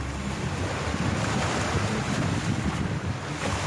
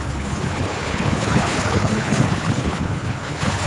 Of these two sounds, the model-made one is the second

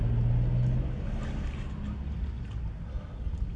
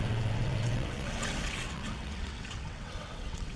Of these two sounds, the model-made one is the second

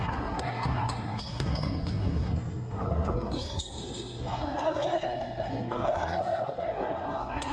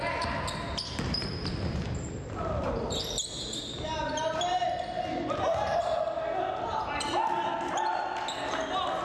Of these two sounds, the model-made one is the first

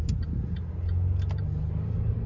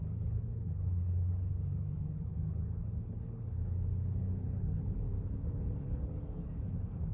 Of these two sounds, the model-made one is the second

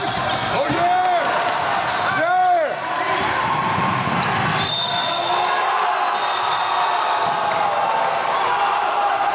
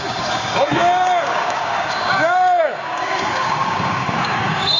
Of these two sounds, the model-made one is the second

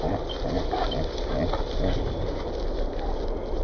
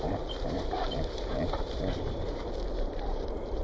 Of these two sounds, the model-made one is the second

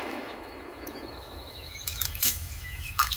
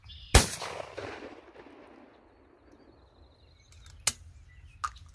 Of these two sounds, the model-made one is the first